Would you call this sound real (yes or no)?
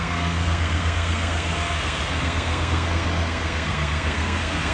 no